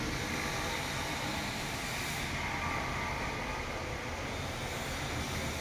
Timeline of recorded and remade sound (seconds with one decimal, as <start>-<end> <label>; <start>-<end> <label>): 0.0-5.6 recorded